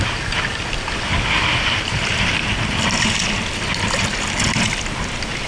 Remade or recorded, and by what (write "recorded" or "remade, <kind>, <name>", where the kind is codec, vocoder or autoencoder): recorded